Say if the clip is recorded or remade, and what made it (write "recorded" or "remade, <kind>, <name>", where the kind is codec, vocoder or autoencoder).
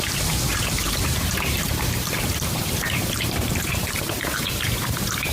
remade, vocoder, BigVGAN v2